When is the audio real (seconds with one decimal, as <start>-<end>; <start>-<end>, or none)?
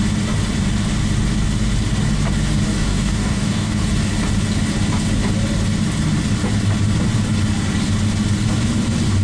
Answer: 0.0-2.8; 3.8-9.2